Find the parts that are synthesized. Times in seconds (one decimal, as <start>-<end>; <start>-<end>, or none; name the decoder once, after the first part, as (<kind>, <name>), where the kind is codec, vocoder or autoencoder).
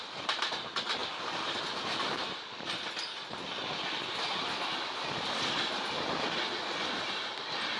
none